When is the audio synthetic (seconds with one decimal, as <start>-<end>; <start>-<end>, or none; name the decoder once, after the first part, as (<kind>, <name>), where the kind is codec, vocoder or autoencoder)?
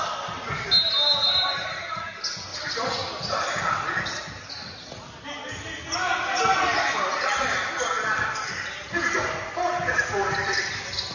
none